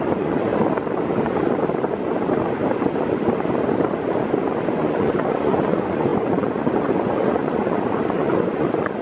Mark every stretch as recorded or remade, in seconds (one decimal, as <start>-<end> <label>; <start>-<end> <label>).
0.0-0.5 remade; 0.5-4.7 recorded; 4.7-9.0 remade